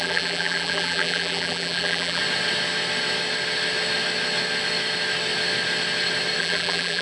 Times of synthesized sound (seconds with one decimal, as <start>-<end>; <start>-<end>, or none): 0.0-2.2; 6.4-7.0